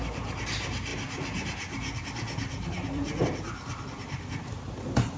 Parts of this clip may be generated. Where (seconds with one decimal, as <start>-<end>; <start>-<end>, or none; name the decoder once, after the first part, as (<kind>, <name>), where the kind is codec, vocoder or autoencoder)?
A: none